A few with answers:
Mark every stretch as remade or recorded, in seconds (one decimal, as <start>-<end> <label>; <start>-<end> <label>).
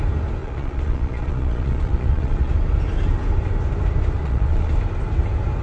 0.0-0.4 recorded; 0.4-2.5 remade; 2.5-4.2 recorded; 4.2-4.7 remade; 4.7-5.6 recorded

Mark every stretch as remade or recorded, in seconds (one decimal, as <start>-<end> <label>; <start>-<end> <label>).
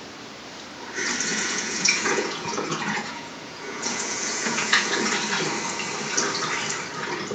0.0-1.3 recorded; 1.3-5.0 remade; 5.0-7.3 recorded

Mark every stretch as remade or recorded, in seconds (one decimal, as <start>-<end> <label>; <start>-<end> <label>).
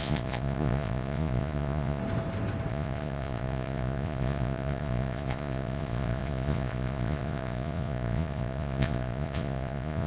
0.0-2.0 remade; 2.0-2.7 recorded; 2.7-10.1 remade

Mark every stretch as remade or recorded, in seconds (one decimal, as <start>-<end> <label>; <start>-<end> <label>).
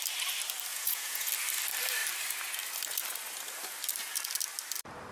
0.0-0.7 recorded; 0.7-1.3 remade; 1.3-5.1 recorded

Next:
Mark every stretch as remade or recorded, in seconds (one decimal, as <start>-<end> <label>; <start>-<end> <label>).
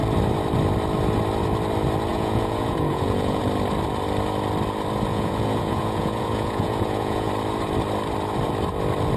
0.0-2.1 recorded; 2.1-3.4 remade; 3.4-5.1 recorded; 5.1-7.3 remade; 7.3-9.2 recorded